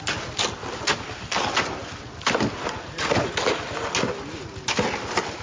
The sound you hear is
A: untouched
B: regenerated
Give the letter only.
A